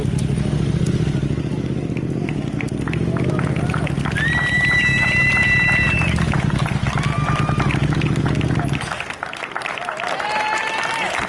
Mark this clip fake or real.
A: real